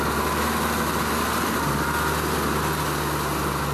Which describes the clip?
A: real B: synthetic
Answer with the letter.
A